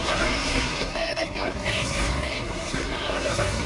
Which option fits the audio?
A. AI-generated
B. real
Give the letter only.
A